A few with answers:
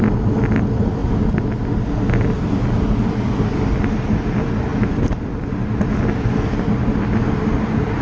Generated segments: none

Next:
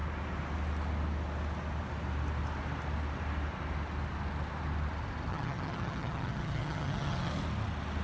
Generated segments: 5.3-7.3

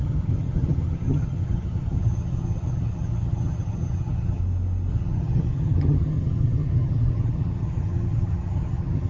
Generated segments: 0.0-4.4; 4.9-9.1